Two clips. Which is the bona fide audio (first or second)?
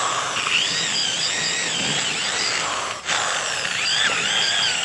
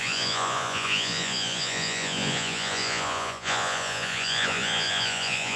first